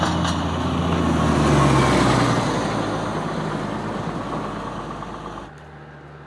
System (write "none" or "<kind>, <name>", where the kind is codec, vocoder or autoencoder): none